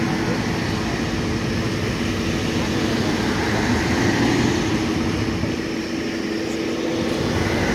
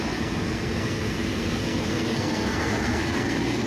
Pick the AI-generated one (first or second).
second